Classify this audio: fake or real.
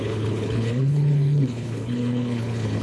fake